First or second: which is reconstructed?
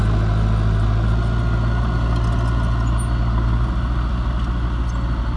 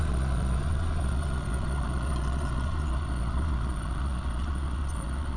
second